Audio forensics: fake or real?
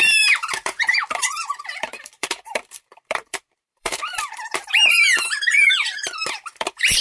fake